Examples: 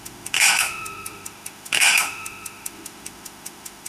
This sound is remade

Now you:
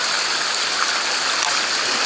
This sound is recorded